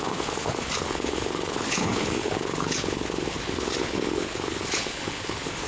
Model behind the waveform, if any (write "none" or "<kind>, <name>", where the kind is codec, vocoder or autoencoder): codec, HILCodec